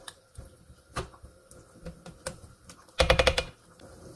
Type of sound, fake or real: real